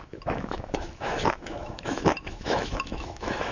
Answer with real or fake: fake